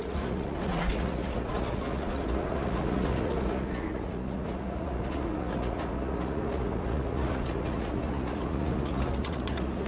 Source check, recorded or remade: remade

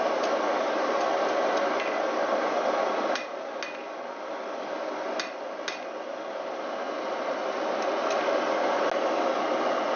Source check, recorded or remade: recorded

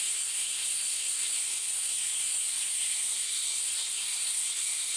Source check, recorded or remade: remade